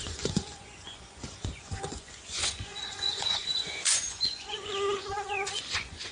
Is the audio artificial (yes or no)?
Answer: yes